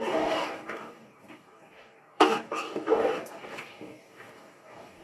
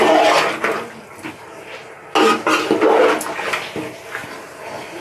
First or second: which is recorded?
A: second